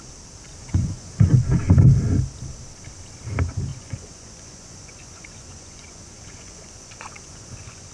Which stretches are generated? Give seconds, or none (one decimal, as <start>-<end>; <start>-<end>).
0.5-1.4; 3.7-7.9